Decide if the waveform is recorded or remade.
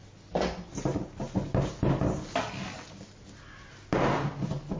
recorded